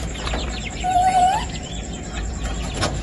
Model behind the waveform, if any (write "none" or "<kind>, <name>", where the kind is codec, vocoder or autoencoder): vocoder, BigVGAN v2